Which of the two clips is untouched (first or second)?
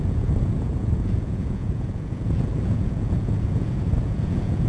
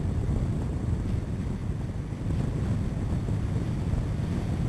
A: second